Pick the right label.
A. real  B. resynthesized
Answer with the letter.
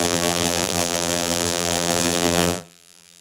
B